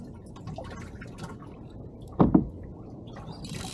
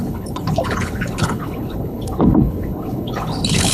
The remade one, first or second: second